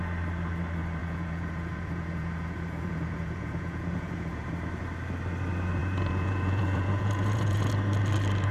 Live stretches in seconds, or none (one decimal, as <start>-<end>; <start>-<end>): 0.0-1.0; 4.5-5.8; 7.7-8.5